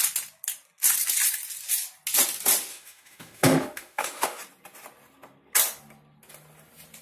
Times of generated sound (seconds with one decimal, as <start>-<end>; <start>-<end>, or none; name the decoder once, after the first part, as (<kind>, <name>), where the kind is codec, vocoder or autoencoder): 2.7-4.4 (autoencoder, DAC-VAE)